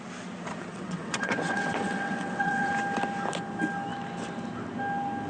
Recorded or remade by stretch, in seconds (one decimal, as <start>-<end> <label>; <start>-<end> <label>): 0.0-0.7 recorded; 0.7-2.7 remade; 2.7-5.3 recorded